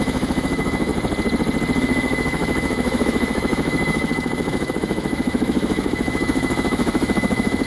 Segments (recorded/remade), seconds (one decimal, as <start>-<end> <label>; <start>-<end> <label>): 0.0-0.9 remade; 0.9-1.8 recorded; 1.8-7.7 remade